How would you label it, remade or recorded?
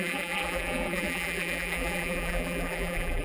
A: remade